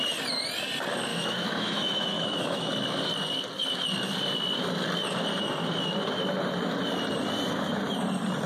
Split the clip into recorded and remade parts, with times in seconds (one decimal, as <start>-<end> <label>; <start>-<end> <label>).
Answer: 0.0-1.1 recorded; 1.1-2.7 remade; 2.7-8.5 recorded